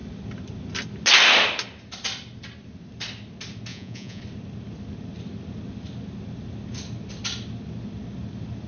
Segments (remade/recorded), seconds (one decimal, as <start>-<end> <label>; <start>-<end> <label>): 0.0-3.7 recorded; 3.7-4.2 remade; 4.2-8.7 recorded